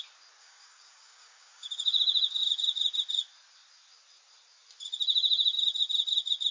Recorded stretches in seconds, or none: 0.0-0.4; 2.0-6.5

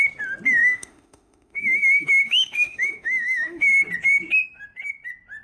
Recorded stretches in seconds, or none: 0.0-0.6; 3.8-5.4

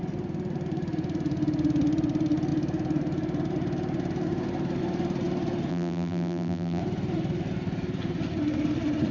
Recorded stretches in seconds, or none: 0.0-5.7; 6.8-9.1

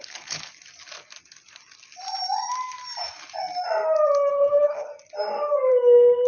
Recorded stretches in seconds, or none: 0.5-4.3; 4.9-6.3

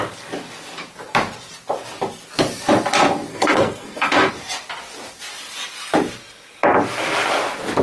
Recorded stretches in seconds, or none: 0.0-3.3; 4.3-7.8

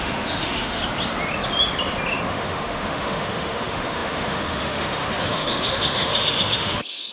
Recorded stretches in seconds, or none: 0.8-2.3

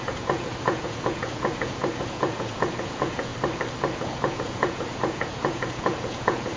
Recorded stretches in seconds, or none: 3.3-4.3